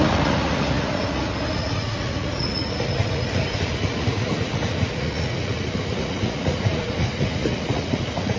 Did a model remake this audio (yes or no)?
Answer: yes